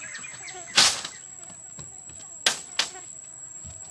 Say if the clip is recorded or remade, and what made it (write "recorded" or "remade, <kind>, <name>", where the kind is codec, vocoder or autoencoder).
recorded